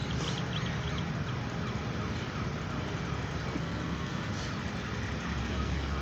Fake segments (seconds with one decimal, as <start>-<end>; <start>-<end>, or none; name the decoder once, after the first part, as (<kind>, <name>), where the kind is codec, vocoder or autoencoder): 3.6-4.3 (codec, SNAC); 5.4-6.0